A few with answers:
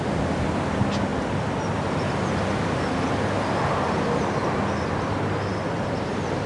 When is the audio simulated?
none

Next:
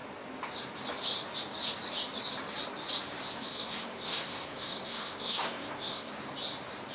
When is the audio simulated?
3.3-6.1 (codec, SNAC)